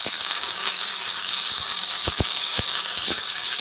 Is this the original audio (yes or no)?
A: no